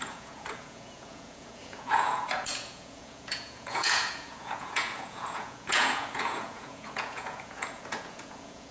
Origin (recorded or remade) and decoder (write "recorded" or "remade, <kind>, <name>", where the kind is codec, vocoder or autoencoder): remade, vocoder, Vocos